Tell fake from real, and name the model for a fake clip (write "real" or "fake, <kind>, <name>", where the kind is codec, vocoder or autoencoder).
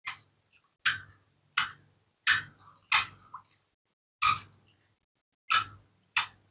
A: real